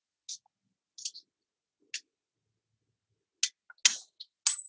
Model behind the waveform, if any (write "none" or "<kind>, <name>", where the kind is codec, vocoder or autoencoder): none